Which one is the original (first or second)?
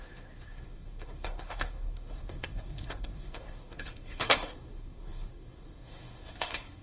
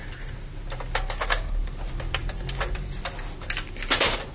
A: second